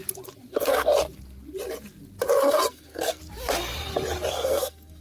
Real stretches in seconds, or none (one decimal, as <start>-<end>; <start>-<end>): 0.0-0.5; 0.9-2.7; 3.2-4.3